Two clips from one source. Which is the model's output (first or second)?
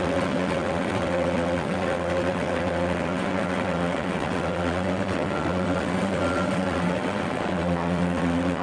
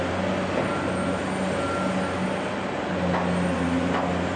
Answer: first